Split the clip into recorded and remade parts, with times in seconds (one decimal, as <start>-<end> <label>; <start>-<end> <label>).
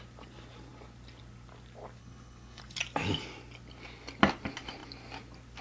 0.0-2.0 recorded; 2.0-2.6 remade; 2.6-5.6 recorded